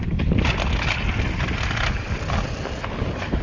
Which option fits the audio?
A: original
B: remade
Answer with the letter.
A